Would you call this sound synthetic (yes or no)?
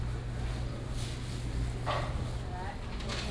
no